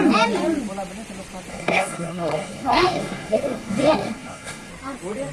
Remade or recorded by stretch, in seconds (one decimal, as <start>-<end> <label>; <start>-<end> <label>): 0.0-1.5 recorded; 1.5-4.7 remade; 4.7-5.3 recorded